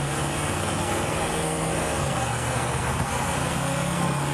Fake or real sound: fake